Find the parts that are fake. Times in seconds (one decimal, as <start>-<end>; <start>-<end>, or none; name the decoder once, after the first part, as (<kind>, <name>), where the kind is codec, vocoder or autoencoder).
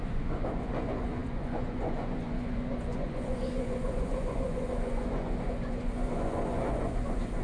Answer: 0.0-7.4 (vocoder, Vocos)